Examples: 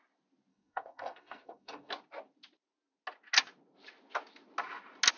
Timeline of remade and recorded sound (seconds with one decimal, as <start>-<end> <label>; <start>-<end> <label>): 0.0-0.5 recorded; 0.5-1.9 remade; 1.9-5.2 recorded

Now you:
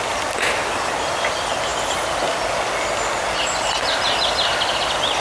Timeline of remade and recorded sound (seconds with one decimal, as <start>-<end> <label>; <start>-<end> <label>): 0.0-5.2 recorded

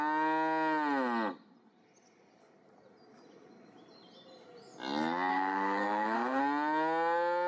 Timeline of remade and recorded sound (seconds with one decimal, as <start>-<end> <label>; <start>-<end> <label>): 0.0-5.3 recorded; 5.3-6.4 remade; 6.4-7.5 recorded